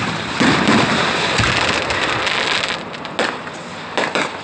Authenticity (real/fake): real